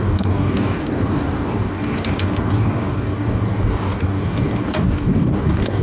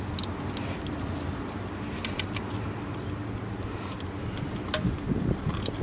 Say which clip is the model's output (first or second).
first